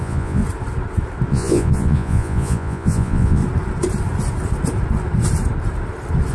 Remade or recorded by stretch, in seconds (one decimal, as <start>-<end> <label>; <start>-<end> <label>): 0.0-0.4 remade; 0.4-1.3 recorded; 1.3-3.4 remade; 3.4-6.3 recorded